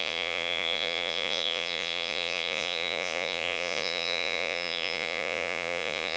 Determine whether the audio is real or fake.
fake